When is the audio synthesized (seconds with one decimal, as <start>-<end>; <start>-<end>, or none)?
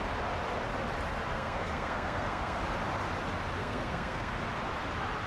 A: 1.3-2.6; 3.6-4.3